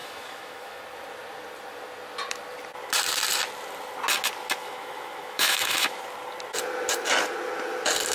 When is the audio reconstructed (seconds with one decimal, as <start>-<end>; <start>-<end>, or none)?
0.0-0.8; 4.6-6.0